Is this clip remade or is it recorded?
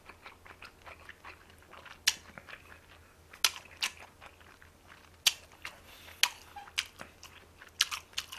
recorded